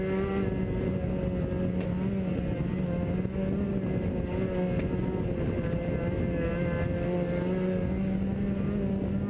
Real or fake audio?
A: real